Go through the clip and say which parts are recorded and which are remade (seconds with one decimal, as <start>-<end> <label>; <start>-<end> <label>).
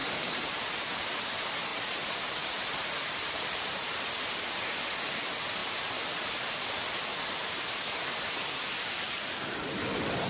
0.0-1.2 remade; 1.2-1.7 recorded; 1.7-4.0 remade; 4.0-5.6 recorded; 5.6-6.4 remade; 6.4-10.3 recorded